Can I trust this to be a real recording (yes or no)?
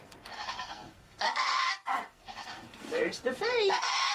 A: no